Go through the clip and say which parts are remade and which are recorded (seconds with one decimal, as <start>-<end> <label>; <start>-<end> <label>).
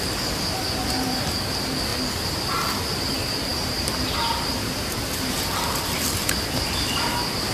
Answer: 0.0-7.5 recorded